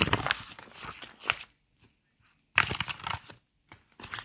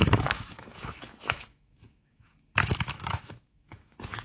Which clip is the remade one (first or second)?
second